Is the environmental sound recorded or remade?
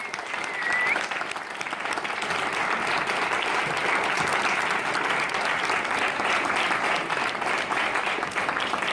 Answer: recorded